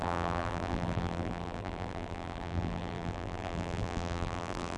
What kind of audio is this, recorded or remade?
remade